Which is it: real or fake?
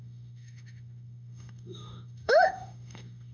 fake